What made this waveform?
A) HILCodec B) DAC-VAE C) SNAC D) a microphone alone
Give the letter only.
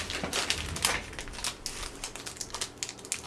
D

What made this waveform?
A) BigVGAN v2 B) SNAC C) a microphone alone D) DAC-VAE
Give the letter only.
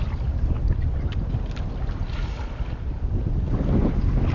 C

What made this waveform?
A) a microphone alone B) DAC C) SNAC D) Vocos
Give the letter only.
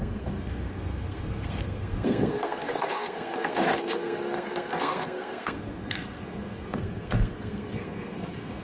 C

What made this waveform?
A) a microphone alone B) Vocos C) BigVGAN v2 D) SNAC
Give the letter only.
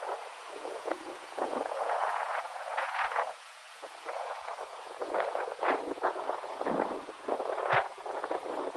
B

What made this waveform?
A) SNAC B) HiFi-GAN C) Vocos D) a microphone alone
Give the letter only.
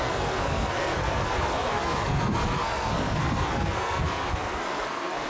A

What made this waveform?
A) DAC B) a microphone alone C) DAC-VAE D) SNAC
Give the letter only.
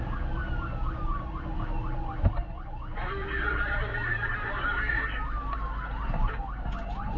B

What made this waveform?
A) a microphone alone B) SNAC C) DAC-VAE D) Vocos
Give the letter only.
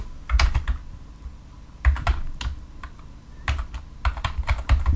A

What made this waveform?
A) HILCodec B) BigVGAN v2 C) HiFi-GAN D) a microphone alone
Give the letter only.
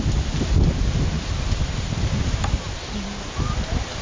D